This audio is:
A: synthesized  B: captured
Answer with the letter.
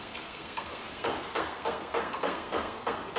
A